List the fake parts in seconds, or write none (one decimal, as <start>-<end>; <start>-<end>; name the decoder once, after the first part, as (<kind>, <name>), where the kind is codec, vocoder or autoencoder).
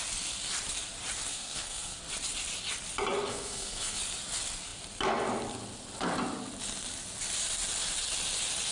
1.3-2.0 (codec, SNAC); 3.3-4.0